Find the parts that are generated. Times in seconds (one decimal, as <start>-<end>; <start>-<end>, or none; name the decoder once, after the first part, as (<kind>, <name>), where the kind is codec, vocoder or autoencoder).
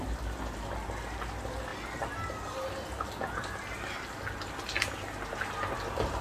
none